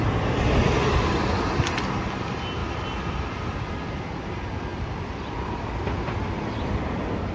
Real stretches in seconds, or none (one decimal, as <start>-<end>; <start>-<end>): 0.0-2.6; 3.2-7.3